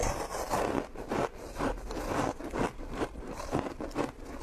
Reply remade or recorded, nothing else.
recorded